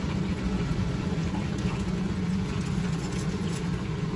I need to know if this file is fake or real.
fake